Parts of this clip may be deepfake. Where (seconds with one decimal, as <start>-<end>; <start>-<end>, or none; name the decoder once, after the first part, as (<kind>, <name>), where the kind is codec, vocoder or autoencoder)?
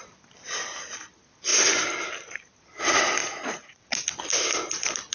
3.2-3.8 (vocoder, Vocos)